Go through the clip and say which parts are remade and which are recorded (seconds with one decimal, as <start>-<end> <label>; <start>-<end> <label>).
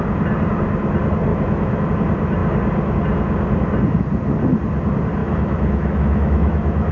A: 0.0-1.3 recorded; 1.3-1.9 remade; 1.9-5.2 recorded; 5.2-6.9 remade